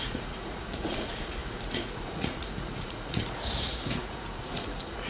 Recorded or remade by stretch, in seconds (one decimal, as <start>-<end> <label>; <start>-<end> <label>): 0.0-5.1 remade